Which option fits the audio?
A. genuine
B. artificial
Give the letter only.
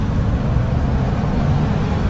A